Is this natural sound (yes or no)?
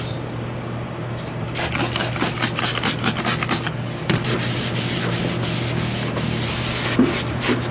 yes